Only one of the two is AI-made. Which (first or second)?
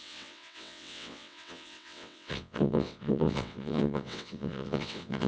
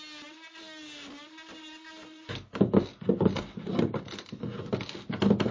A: first